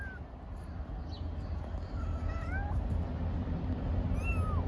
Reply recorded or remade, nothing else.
recorded